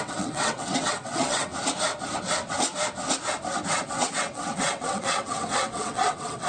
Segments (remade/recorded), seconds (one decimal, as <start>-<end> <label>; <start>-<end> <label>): 0.0-1.5 remade; 1.5-3.8 recorded; 3.8-6.5 remade

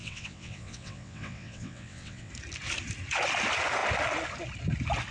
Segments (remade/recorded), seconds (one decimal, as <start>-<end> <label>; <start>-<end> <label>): 0.0-2.3 remade; 2.3-5.1 recorded

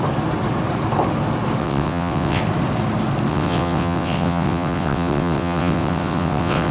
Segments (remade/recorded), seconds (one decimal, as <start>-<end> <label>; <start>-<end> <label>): 0.0-1.6 recorded; 1.6-2.4 remade; 2.4-3.3 recorded; 3.3-6.7 remade

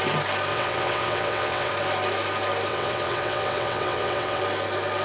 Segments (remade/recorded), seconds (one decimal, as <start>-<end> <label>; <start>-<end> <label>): 0.0-0.5 recorded; 0.5-1.7 remade; 1.7-2.7 recorded; 2.7-4.4 remade; 4.4-5.0 recorded

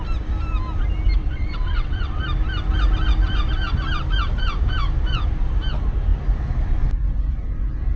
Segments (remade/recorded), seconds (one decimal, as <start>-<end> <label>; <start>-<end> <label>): 0.0-1.2 recorded; 1.2-2.2 remade; 2.2-8.0 recorded

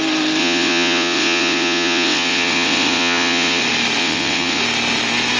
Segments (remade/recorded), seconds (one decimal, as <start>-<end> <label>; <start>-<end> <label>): 0.0-0.4 recorded; 0.4-3.6 remade; 3.6-4.0 recorded; 4.0-4.6 remade; 4.6-5.4 recorded